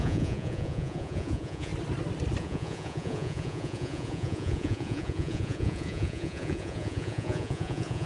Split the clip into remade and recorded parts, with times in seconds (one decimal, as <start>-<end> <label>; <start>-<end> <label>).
0.0-1.7 remade; 1.7-2.4 recorded; 2.4-8.1 remade